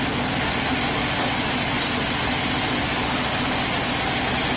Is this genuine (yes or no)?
yes